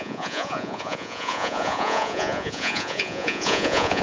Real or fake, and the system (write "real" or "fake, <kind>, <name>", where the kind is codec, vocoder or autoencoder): fake, vocoder, Vocos